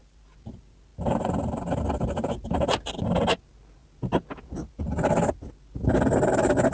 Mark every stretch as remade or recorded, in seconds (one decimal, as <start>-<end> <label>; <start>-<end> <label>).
0.0-6.7 recorded